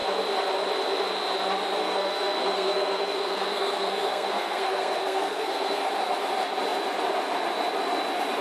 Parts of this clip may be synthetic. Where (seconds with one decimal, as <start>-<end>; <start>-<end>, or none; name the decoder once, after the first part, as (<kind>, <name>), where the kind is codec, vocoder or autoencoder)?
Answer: 1.8-5.9 (codec, SNAC)